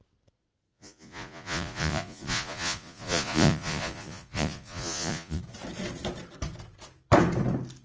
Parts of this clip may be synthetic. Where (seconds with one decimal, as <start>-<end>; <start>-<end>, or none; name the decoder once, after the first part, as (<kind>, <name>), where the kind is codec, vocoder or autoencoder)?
0.7-5.4 (vocoder, Vocos)